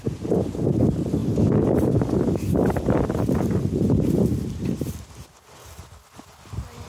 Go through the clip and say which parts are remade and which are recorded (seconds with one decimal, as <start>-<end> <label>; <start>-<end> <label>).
0.0-1.2 recorded; 1.2-4.8 remade; 4.8-6.9 recorded